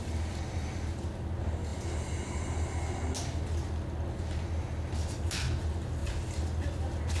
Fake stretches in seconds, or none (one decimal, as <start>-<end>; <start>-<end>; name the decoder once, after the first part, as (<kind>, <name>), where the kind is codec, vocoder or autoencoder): none